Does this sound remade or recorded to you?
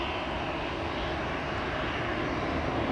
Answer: recorded